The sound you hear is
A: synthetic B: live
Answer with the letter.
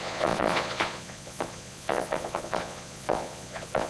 A